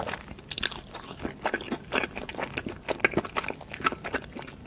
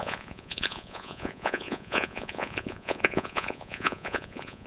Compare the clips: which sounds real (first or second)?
first